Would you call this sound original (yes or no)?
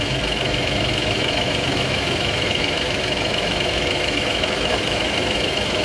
no